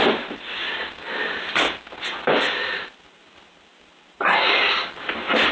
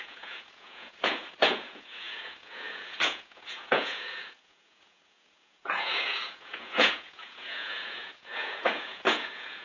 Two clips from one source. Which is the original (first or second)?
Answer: first